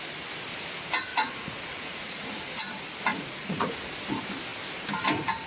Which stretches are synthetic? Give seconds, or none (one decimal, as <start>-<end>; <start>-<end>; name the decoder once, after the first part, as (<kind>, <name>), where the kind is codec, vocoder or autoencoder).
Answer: 1.1-2.5 (vocoder, Vocos); 3.1-3.7

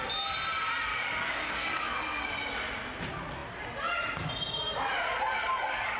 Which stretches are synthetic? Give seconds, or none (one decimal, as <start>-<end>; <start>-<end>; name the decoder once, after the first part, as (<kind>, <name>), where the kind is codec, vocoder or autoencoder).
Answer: 0.9-2.3 (codec, DAC); 5.5-6.0

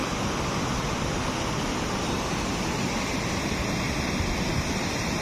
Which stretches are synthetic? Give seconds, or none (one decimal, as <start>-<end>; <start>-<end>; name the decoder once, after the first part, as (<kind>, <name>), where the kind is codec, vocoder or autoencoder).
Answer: none

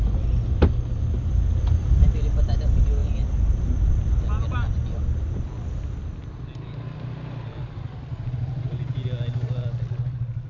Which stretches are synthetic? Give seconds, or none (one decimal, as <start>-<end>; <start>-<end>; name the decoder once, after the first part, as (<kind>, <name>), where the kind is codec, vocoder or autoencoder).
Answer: none

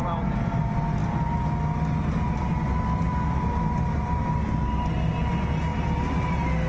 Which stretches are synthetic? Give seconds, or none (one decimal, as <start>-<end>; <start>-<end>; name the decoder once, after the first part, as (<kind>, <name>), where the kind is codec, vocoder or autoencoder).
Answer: none

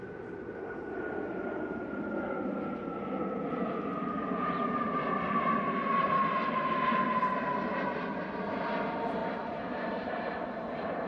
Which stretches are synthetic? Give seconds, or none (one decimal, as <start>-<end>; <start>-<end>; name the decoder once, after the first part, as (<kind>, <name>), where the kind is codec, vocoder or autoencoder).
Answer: 9.2-11.1 (vocoder, BigVGAN v2)

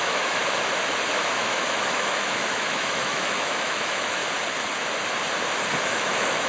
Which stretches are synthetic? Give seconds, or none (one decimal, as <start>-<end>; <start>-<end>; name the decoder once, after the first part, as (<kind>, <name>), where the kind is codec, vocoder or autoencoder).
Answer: 0.0-0.4 (autoencoder, DAC-VAE); 1.2-4.2; 5.8-6.5